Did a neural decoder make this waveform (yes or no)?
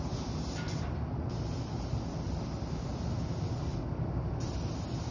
no